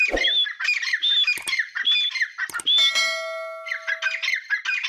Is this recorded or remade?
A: recorded